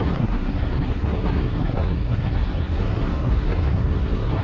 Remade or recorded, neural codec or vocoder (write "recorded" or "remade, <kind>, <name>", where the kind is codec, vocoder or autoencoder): remade, codec, SNAC